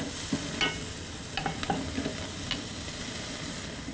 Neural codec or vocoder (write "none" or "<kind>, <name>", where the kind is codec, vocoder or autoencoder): none